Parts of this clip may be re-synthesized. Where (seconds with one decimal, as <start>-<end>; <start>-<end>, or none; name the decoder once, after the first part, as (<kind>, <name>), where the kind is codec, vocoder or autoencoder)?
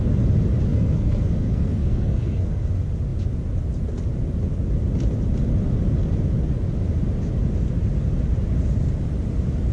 0.7-2.7 (codec, SNAC)